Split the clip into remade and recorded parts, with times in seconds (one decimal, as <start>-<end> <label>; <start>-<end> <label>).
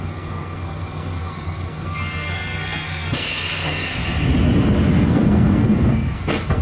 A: 0.0-4.0 remade; 4.0-5.0 recorded; 5.0-6.6 remade